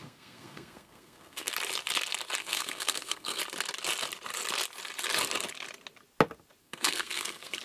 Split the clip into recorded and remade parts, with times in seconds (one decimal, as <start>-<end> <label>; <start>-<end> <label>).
0.0-1.5 remade; 1.5-2.4 recorded; 2.4-3.4 remade; 3.4-6.6 recorded; 6.6-7.6 remade